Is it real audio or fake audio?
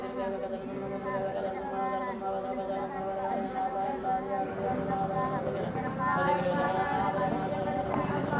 real